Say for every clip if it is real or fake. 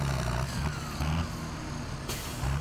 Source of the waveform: real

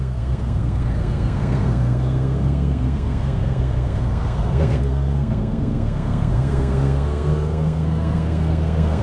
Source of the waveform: fake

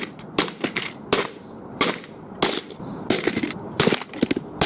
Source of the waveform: real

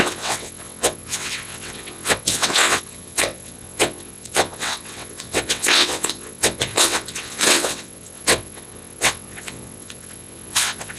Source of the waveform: fake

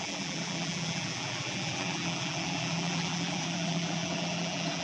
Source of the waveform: fake